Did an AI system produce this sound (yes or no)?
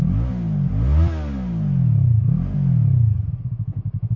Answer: no